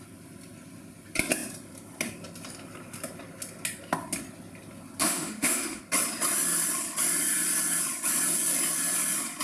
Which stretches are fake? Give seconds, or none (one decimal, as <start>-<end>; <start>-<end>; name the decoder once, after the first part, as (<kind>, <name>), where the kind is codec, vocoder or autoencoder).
5.0-5.8 (autoencoder, DAC-VAE)